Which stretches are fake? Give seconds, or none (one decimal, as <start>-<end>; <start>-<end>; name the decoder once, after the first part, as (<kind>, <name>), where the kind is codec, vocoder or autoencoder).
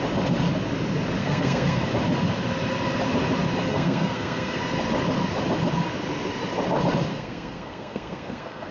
1.2-1.9 (codec, SNAC); 3.7-4.6; 7.1-8.7